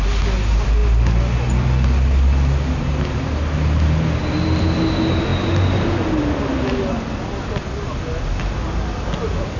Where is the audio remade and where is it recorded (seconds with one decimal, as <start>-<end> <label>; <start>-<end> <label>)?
0.0-9.6 recorded